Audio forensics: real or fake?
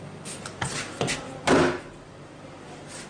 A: real